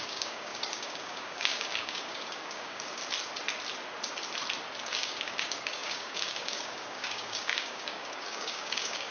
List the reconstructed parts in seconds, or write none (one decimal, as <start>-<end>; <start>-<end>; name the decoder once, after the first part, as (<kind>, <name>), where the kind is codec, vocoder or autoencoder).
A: 0.0-3.0 (codec, DAC); 4.8-9.1